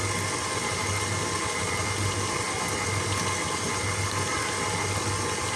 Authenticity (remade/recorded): recorded